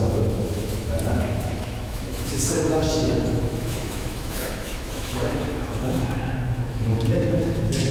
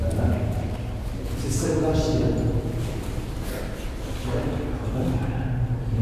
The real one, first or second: second